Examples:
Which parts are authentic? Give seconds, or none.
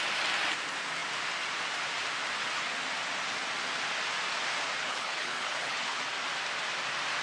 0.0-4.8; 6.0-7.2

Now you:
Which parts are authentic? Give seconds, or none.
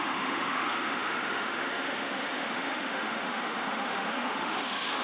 none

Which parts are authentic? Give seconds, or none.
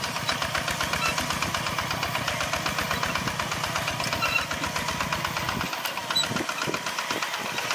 0.0-7.7